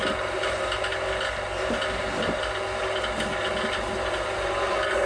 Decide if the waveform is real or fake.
real